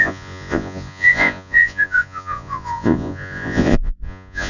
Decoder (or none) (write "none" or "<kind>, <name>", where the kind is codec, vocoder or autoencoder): vocoder, Vocos